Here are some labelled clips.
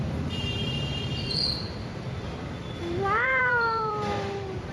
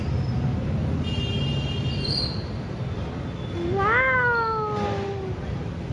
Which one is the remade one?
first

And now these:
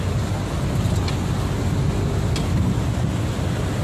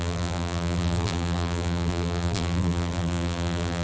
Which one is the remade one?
second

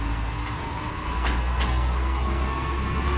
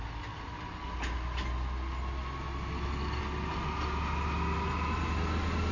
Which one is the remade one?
first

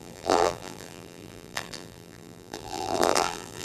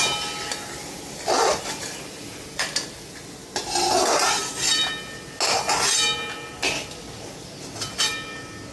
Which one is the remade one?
first